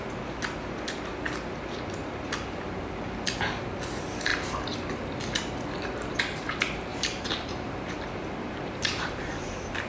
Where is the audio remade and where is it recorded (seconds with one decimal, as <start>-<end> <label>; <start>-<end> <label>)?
0.0-6.9 recorded; 6.9-9.9 remade